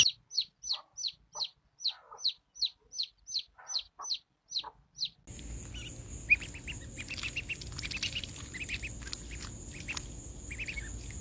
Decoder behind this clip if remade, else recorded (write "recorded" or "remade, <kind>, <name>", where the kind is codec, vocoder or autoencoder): recorded